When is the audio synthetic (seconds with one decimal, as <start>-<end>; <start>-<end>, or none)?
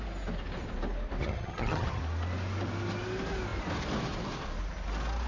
1.2-2.0